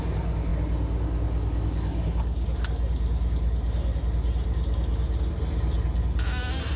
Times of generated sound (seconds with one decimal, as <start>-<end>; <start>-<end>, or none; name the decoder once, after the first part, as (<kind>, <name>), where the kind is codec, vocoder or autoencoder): none